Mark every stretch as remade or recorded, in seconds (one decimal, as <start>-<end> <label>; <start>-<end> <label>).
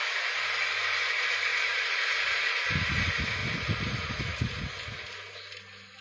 0.0-1.5 recorded; 1.5-2.1 remade; 2.1-3.4 recorded; 3.4-4.9 remade; 4.9-6.0 recorded